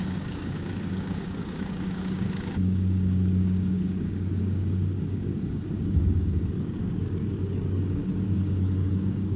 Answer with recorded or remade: remade